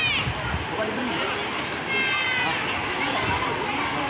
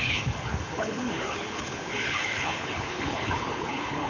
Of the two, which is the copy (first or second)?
second